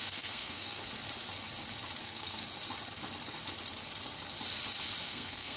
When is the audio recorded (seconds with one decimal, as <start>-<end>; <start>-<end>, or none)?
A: 0.8-2.0; 2.4-5.0